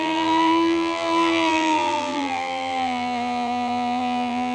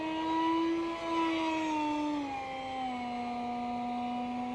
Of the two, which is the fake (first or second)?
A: first